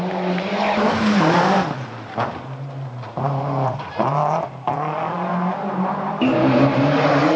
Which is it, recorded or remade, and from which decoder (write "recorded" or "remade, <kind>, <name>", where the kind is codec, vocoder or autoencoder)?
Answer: remade, vocoder, BigVGAN v2